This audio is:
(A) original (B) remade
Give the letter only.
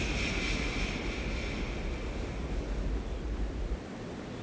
A